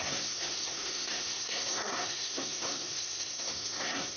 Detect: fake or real fake